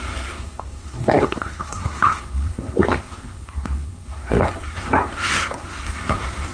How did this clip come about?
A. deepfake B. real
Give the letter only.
A